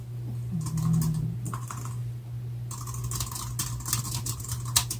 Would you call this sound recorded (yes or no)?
yes